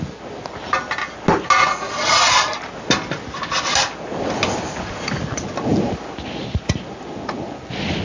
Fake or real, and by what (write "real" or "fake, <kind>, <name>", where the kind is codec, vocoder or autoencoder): real